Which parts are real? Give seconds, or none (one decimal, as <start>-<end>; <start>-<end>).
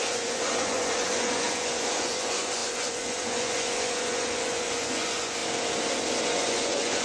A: 5.4-6.2